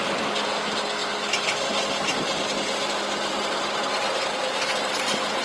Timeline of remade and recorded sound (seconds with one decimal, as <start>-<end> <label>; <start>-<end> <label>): 0.0-5.4 recorded